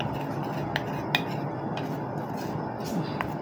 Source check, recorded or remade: recorded